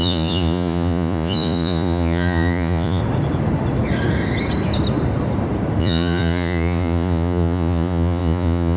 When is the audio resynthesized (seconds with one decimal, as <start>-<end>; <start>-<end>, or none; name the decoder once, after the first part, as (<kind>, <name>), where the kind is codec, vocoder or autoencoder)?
0.0-3.0 (vocoder, Vocos); 5.8-8.8